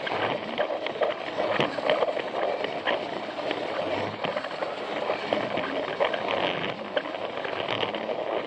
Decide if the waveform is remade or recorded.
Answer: recorded